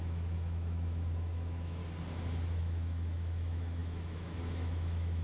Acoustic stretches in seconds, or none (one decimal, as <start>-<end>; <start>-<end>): 1.8-2.6